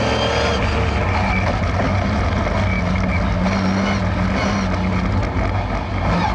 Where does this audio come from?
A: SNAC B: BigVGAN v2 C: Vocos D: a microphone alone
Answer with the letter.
D